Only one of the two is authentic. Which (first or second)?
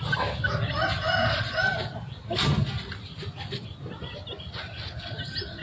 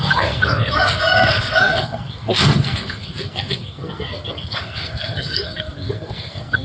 first